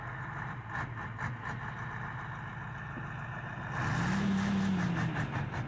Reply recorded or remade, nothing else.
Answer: recorded